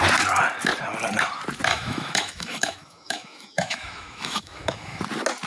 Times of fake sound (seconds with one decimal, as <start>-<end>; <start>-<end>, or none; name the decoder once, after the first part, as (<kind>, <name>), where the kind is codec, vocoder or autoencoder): 1.7-5.0 (autoencoder, DAC-VAE)